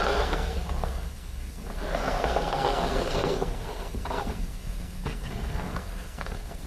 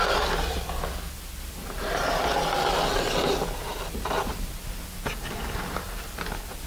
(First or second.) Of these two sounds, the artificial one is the first